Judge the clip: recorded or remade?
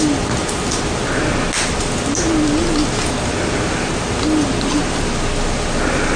recorded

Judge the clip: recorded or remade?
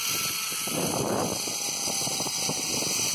recorded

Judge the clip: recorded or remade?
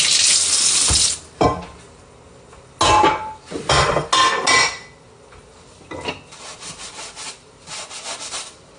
recorded